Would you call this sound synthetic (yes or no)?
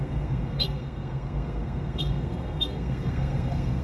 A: yes